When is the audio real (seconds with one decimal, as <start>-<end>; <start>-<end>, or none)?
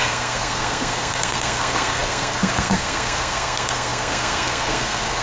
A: none